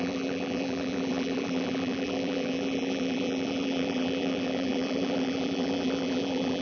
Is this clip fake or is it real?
fake